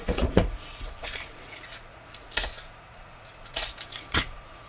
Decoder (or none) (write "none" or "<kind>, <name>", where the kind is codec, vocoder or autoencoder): vocoder, Vocos